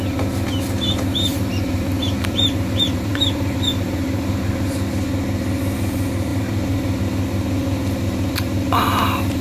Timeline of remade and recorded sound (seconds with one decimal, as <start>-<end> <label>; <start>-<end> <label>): 0.0-1.3 recorded; 1.3-4.5 remade; 4.5-6.3 recorded; 6.3-7.0 remade; 7.0-9.4 recorded